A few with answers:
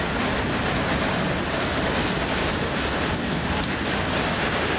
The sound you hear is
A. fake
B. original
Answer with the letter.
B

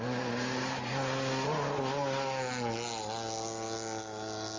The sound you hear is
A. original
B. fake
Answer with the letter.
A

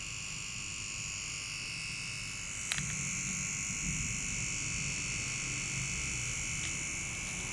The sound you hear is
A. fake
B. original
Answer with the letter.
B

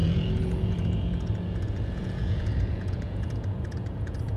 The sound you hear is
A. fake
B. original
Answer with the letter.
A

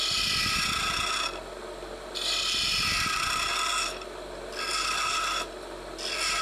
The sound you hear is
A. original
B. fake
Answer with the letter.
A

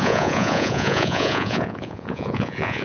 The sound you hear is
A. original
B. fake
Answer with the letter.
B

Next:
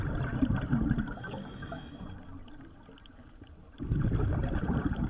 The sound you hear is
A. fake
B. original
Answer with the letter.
B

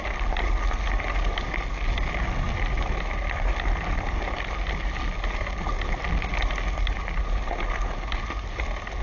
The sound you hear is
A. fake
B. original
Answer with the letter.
B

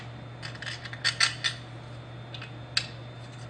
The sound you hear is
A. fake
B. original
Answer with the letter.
B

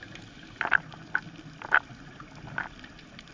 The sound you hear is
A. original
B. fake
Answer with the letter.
A